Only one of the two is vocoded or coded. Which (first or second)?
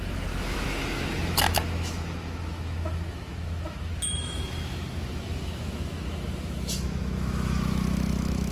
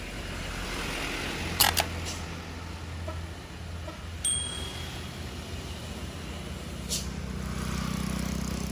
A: first